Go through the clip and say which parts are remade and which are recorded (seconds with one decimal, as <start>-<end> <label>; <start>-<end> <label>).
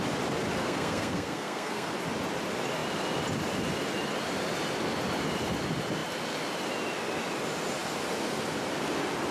0.0-0.6 recorded; 0.6-1.9 remade; 1.9-9.3 recorded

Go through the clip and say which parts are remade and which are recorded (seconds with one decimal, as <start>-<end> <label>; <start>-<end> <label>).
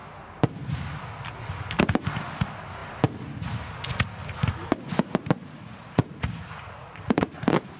0.0-5.4 recorded; 5.4-7.3 remade; 7.3-7.8 recorded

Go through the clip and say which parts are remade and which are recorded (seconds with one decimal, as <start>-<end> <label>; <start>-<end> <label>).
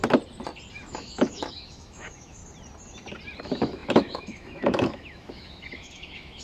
0.0-0.7 recorded; 0.7-2.4 remade; 2.4-3.4 recorded; 3.4-6.4 remade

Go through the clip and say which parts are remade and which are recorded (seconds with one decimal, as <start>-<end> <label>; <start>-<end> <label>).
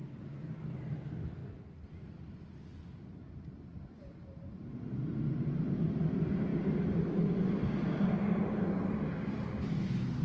0.0-10.2 recorded